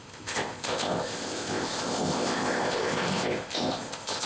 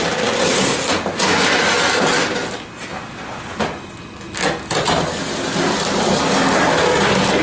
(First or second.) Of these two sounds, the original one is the second